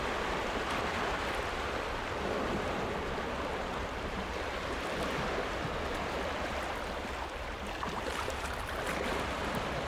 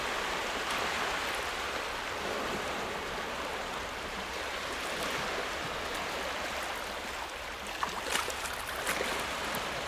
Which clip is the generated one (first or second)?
first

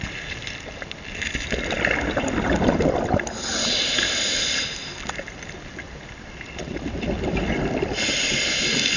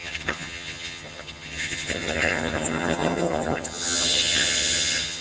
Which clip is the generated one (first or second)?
second